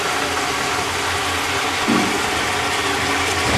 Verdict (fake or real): real